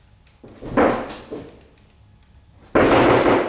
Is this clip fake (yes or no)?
no